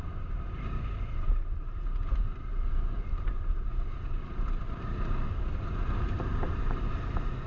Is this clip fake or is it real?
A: fake